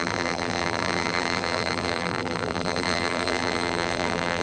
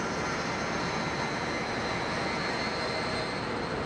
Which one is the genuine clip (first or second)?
second